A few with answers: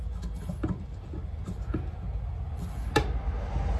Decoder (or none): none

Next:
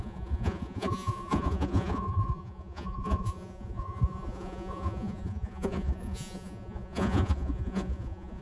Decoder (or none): vocoder, Vocos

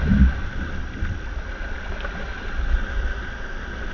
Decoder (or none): none